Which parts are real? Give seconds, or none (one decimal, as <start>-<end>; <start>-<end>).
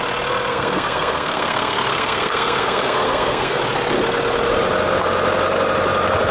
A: 0.0-0.5; 3.6-6.3